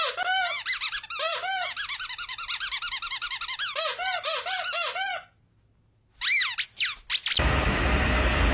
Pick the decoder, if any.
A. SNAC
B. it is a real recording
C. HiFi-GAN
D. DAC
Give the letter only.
B